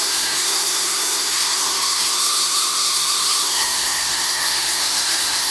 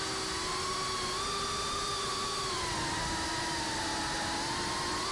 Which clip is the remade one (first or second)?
first